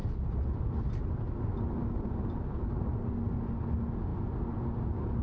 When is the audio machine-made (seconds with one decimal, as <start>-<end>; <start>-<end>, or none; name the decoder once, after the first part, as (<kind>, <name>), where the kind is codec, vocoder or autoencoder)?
none